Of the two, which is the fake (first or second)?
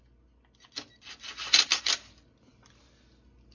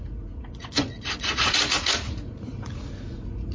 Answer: second